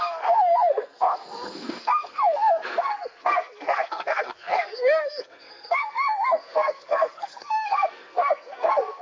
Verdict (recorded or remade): remade